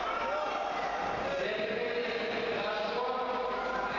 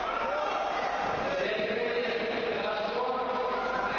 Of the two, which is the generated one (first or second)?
second